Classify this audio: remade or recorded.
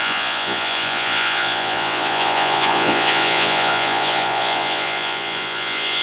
remade